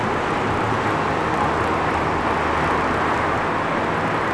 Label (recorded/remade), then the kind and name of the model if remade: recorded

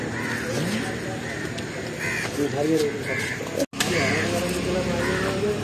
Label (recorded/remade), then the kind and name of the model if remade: recorded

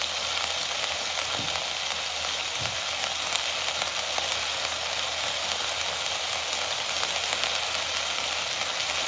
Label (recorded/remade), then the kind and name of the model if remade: recorded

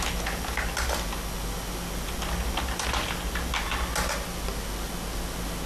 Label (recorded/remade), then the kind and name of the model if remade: recorded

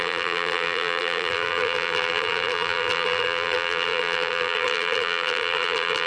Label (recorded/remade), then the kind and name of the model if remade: remade, vocoder, BigVGAN v2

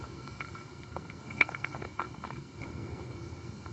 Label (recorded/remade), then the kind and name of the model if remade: remade, codec, SNAC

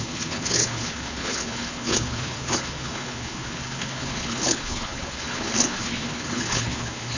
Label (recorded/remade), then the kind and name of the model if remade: remade, codec, HILCodec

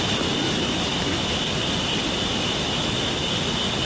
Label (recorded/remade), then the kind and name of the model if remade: recorded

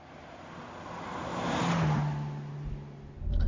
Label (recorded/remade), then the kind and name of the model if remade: recorded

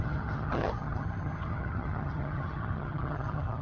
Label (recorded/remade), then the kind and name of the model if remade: remade, vocoder, HiFi-GAN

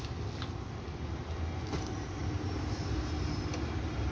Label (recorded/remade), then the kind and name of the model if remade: recorded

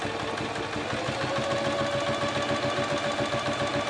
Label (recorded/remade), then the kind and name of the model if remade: recorded